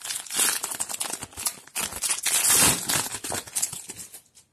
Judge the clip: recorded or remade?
recorded